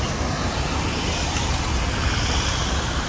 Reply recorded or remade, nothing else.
recorded